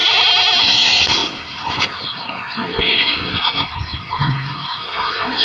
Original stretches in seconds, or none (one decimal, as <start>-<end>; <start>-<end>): 0.0-0.6